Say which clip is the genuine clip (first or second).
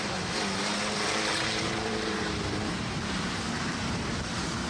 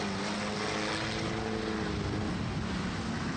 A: second